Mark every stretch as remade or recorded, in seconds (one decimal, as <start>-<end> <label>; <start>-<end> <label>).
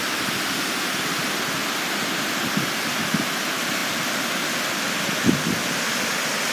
0.0-6.5 recorded